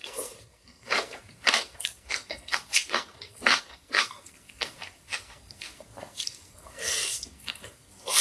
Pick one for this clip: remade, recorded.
remade